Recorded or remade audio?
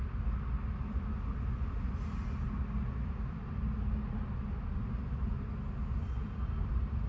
recorded